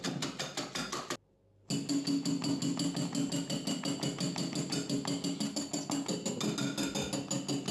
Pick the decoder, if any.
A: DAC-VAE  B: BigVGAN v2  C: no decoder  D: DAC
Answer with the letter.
C